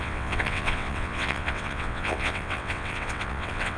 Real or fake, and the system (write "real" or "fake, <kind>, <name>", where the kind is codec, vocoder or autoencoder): fake, vocoder, WaveNeXt